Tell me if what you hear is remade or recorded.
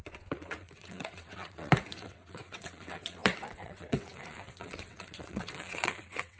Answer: remade